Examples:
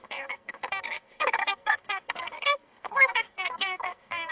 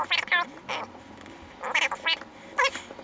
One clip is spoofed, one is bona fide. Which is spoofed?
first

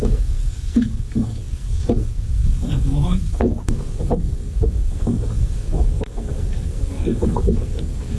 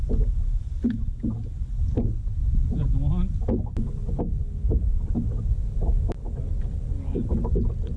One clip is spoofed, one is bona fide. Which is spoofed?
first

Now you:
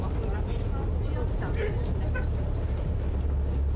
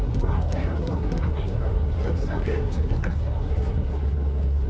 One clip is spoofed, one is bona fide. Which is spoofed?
second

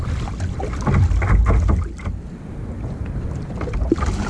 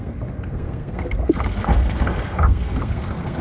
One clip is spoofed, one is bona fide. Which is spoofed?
second